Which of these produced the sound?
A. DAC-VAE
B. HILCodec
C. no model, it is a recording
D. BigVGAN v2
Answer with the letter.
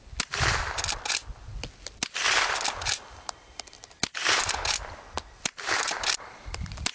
C